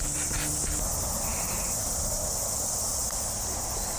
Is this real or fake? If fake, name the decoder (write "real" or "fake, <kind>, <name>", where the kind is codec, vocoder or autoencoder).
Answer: real